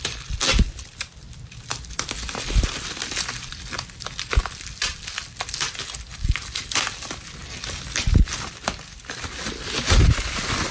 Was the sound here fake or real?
real